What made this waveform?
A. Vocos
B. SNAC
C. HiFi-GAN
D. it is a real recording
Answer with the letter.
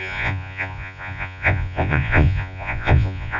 A